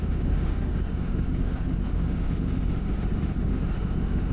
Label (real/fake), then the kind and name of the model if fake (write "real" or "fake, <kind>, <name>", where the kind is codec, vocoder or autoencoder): fake, autoencoder, DAC-VAE